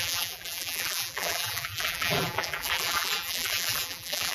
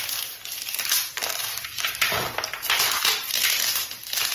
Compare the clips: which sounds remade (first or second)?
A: first